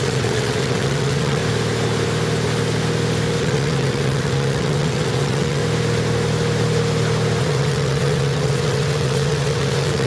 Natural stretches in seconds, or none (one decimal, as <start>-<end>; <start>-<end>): 1.4-3.4; 5.6-7.4